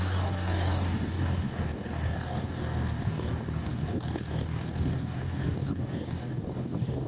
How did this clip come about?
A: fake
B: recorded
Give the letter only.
A